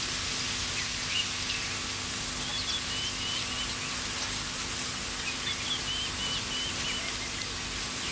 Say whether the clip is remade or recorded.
recorded